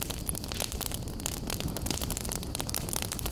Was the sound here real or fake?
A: fake